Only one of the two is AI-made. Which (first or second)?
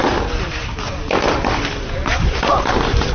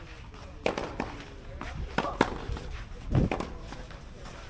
first